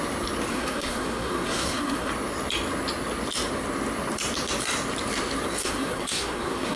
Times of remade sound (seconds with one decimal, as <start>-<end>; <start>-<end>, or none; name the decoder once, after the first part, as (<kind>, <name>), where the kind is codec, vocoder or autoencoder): 0.5-2.1 (codec, SNAC); 5.6-6.8